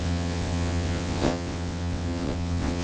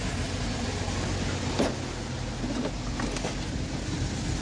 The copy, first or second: first